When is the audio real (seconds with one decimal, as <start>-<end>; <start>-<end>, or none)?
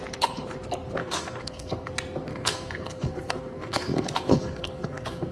0.0-1.0; 1.9-2.3